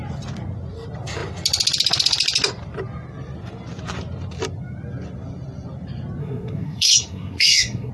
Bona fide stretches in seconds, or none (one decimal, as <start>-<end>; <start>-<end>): 0.0-6.2